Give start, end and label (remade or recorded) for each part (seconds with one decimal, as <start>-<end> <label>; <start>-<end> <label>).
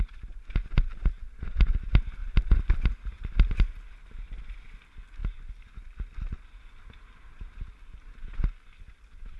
0.0-2.2 recorded; 2.2-2.7 remade; 2.7-9.4 recorded